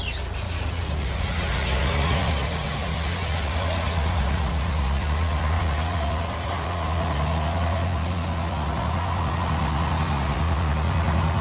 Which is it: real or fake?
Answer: fake